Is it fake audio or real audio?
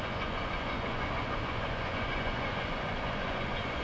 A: fake